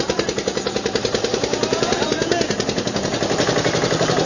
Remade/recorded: remade